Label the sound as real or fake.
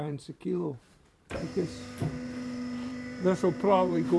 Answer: fake